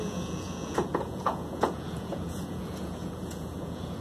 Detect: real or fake fake